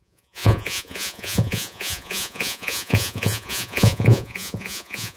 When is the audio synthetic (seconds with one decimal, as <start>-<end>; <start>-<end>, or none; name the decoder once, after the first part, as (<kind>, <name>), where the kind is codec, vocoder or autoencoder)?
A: 0.0-5.2 (vocoder, Vocos)